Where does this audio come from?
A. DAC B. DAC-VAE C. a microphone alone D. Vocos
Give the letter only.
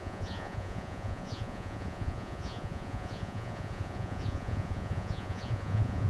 D